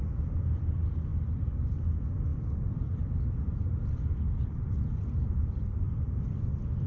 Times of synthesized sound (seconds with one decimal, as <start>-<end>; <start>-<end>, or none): none